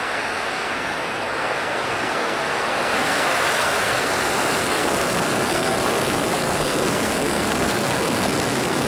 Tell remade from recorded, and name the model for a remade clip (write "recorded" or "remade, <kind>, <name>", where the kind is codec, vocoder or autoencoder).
remade, codec, SNAC